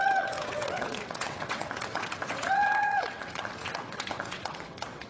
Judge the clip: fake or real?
fake